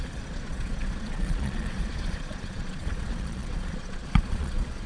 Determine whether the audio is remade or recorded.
remade